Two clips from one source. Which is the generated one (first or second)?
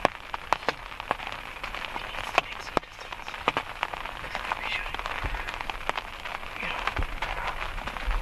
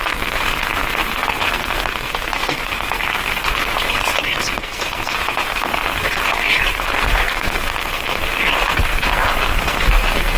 second